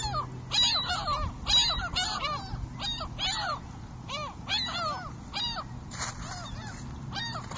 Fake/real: real